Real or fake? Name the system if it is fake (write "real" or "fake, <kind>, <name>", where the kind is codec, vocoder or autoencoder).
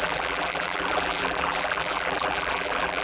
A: fake, vocoder, BigVGAN v2